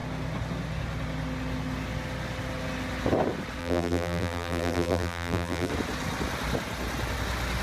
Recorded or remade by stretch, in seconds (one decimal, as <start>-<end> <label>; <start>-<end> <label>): 0.0-3.6 recorded; 3.6-5.7 remade; 5.7-7.6 recorded

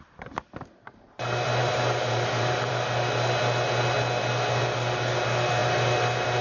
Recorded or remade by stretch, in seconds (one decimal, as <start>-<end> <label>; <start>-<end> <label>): 0.0-1.6 recorded; 1.6-2.7 remade; 2.7-6.4 recorded

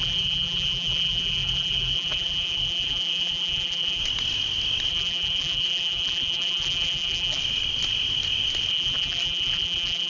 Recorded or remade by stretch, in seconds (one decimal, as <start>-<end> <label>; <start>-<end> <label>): 0.0-4.0 remade; 4.0-4.9 recorded; 4.9-7.4 remade; 7.4-8.7 recorded; 8.7-10.1 remade

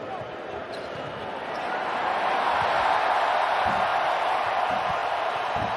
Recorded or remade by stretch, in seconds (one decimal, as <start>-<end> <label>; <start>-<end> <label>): 0.0-0.6 recorded; 0.6-1.4 remade; 1.4-5.0 recorded; 5.0-5.8 remade

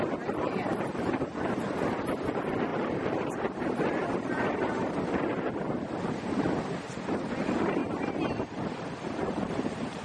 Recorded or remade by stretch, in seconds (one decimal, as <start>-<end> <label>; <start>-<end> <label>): 0.0-2.7 recorded; 2.7-5.1 remade; 5.1-7.8 recorded; 7.8-10.0 remade

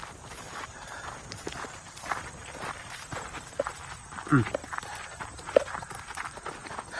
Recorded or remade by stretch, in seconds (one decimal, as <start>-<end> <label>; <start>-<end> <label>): 0.0-3.6 remade; 3.6-7.0 recorded

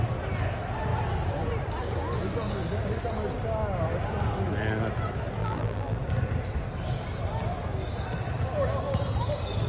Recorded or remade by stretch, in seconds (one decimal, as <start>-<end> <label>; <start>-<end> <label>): 0.0-5.4 recorded; 5.4-6.0 remade; 6.0-9.7 recorded